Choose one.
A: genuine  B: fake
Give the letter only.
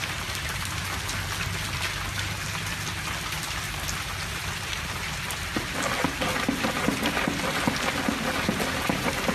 A